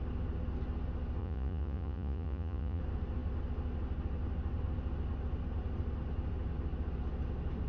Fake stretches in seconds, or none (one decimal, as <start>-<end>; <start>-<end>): 1.2-2.8